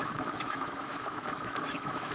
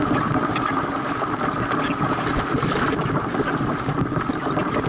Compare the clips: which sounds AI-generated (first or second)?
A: first